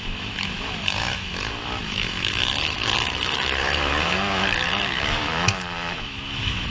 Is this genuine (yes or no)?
no